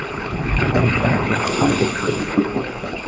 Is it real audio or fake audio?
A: fake